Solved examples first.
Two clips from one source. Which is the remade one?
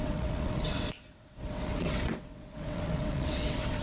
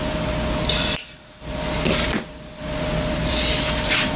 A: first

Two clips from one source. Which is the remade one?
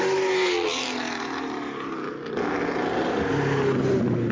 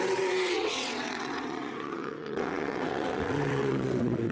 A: second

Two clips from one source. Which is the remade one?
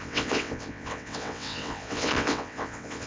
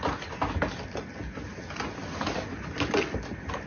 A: first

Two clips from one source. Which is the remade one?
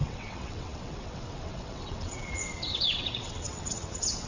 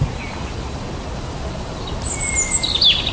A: first